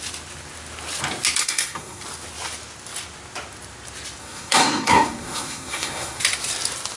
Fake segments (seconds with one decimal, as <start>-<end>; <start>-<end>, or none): 1.4-2.0; 4.2-6.2